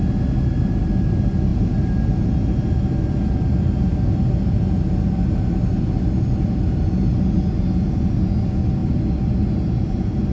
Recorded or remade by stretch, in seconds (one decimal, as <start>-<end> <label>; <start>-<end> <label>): 0.0-1.5 recorded; 1.5-2.1 remade; 2.1-10.3 recorded